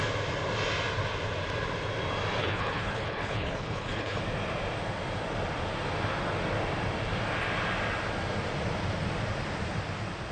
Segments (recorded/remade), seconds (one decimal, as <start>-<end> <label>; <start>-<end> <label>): 0.0-2.4 recorded; 2.4-4.2 remade; 4.2-10.3 recorded